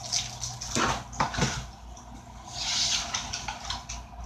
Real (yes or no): yes